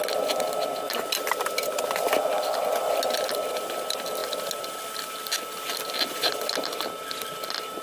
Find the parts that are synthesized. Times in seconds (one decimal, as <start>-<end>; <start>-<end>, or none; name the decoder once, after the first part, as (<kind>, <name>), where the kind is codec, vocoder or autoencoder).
none